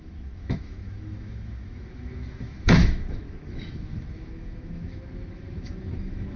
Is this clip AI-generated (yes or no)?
yes